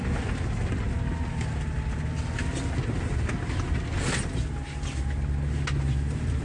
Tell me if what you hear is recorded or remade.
recorded